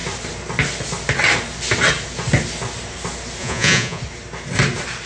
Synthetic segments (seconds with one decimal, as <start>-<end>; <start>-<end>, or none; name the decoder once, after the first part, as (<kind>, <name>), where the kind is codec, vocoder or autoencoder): 3.4-4.0 (vocoder, Vocos)